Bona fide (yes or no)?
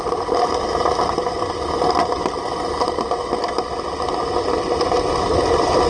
yes